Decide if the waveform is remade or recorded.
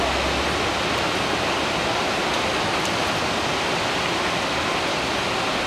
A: recorded